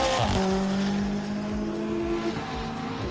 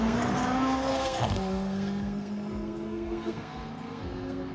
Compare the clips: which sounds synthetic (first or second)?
second